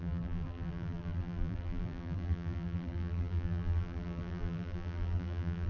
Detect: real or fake fake